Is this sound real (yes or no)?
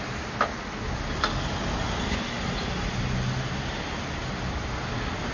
yes